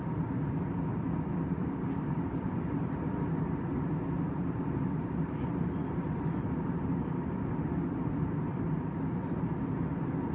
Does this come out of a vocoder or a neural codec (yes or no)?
no